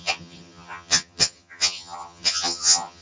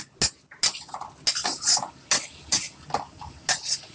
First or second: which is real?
second